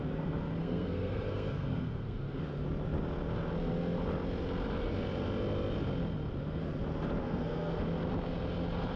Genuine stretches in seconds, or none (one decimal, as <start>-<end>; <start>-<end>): 0.0-0.6; 2.4-7.2; 7.8-9.0